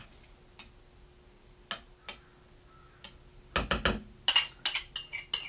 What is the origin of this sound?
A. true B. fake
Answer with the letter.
A